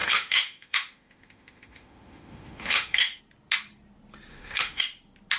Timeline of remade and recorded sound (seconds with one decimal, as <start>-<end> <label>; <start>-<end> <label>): 0.0-3.2 remade; 3.2-4.3 recorded; 4.3-4.8 remade; 4.8-5.4 recorded